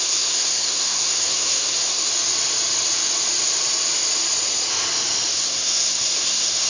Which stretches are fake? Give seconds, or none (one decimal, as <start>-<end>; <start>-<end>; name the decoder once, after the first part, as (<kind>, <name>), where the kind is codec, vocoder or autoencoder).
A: 0.0-2.1 (codec, SNAC); 5.3-6.7